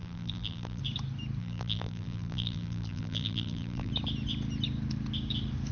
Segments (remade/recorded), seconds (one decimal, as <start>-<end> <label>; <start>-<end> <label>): 0.0-0.8 remade; 0.8-1.4 recorded; 1.4-3.9 remade; 3.9-5.7 recorded

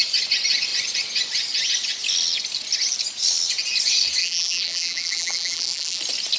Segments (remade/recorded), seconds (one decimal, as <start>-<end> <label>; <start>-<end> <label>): 0.0-4.2 recorded; 4.2-6.0 remade; 6.0-6.4 recorded

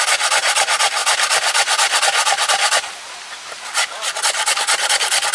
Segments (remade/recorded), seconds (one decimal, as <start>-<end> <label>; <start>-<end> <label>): 0.0-5.3 recorded

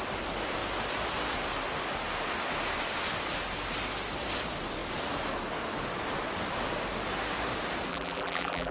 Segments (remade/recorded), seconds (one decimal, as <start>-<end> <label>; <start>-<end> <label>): 0.0-7.9 recorded; 7.9-8.7 remade

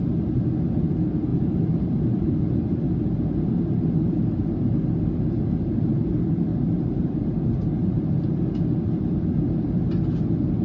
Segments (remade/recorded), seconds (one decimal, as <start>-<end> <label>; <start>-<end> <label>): 0.0-1.3 recorded; 1.3-2.4 remade; 2.4-6.5 recorded; 6.5-8.5 remade; 8.5-10.6 recorded

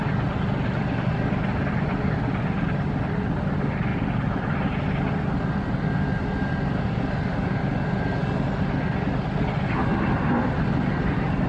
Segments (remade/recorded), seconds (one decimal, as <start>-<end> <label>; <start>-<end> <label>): 0.0-3.9 recorded; 3.9-4.5 remade; 4.5-11.5 recorded